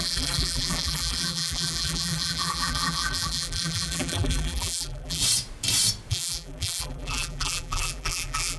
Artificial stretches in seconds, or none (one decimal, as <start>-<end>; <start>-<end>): 0.0-5.2; 6.1-8.6